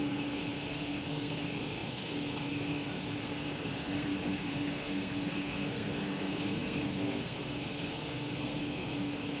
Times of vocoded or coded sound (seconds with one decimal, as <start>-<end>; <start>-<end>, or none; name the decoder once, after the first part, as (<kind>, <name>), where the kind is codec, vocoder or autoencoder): 0.0-9.4 (codec, SNAC)